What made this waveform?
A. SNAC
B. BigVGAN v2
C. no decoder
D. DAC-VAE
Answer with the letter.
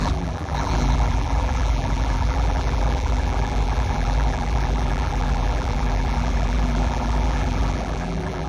B